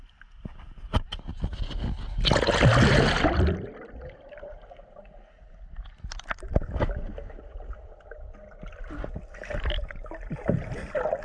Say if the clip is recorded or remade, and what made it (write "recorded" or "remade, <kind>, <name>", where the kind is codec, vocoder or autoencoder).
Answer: recorded